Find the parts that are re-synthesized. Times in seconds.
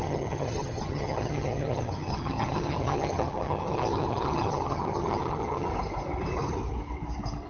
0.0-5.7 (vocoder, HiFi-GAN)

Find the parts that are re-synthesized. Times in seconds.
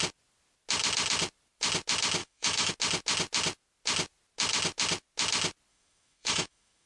2.2-2.7 (autoencoder, DAC-VAE); 5.7-6.9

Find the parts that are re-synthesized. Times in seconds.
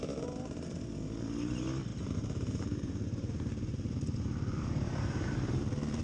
1.9-5.5 (vocoder, BigVGAN v2)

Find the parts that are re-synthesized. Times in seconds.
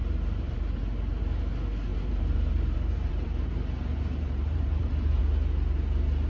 0.0-1.2 (vocoder, BigVGAN v2); 1.9-5.2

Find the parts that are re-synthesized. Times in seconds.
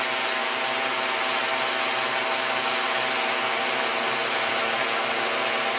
none